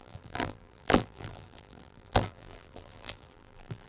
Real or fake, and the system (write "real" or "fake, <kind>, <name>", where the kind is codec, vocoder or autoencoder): fake, vocoder, BigVGAN v2